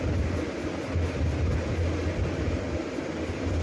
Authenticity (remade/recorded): recorded